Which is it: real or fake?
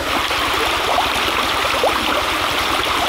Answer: fake